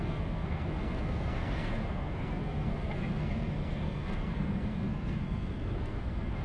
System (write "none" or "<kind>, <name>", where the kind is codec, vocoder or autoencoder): codec, SNAC